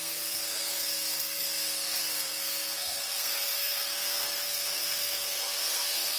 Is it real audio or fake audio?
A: fake